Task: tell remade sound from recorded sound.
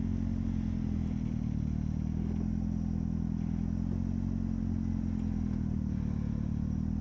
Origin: recorded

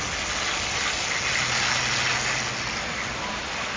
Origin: recorded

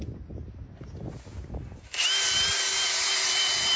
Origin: recorded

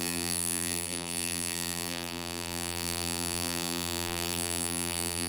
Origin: remade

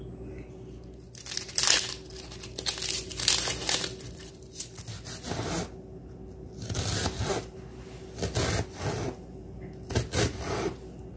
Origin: recorded